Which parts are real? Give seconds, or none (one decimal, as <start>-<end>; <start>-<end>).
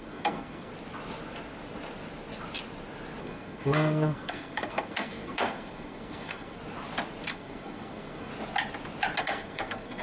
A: 0.7-3.2; 6.6-7.3; 8.3-9.2